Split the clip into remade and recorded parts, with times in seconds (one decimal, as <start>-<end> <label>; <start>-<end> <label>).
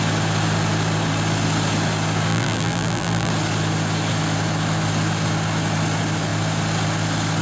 0.0-2.3 recorded; 2.3-3.3 remade; 3.3-7.4 recorded